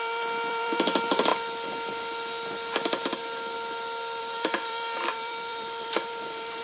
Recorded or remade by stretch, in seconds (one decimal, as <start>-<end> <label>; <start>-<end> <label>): 0.0-1.3 remade; 1.3-4.2 recorded; 4.2-6.6 remade